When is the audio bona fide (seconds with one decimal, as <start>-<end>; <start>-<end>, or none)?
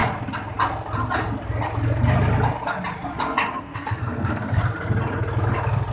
0.0-3.5; 4.6-5.9